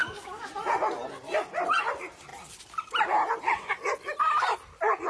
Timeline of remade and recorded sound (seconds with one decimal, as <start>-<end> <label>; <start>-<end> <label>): 0.0-0.5 remade; 0.5-5.1 recorded